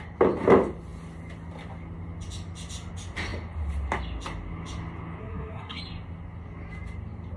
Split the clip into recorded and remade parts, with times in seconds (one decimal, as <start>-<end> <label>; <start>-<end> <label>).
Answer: 0.0-5.2 recorded; 5.2-5.8 remade; 5.8-7.4 recorded